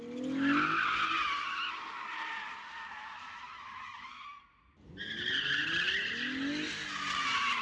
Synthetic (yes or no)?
no